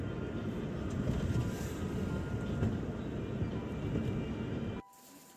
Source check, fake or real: real